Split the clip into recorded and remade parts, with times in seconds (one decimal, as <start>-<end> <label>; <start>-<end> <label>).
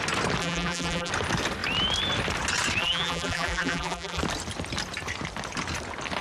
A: 0.0-0.4 recorded; 0.4-1.1 remade; 1.1-2.8 recorded; 2.8-4.2 remade; 4.2-6.2 recorded